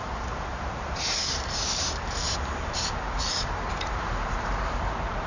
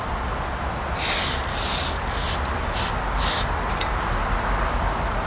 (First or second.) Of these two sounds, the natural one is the second